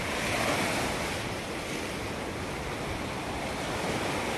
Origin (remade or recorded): recorded